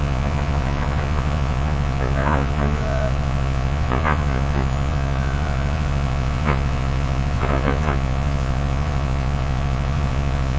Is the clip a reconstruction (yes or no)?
yes